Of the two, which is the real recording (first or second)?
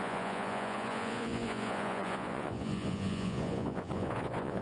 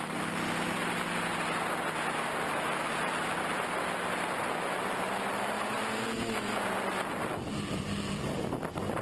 second